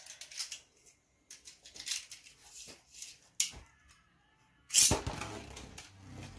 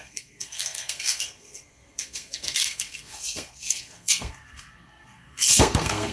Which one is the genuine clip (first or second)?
first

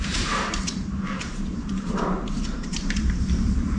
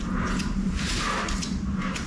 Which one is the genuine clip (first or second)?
second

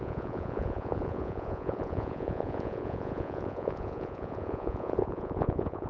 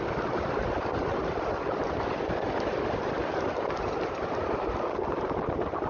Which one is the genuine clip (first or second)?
second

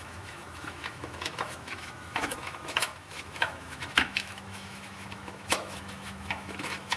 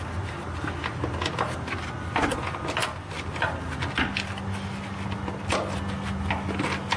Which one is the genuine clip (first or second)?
second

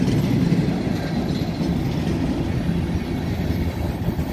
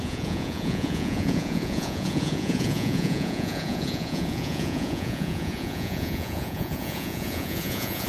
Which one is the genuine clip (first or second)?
first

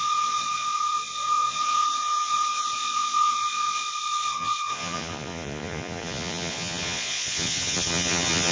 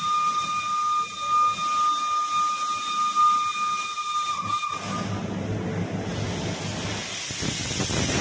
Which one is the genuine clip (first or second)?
second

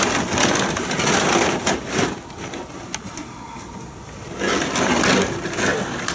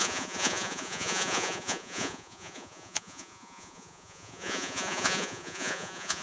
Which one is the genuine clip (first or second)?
first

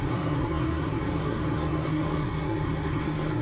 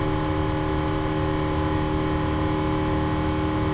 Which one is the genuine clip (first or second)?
second